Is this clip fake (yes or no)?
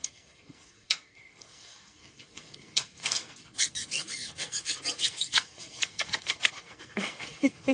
yes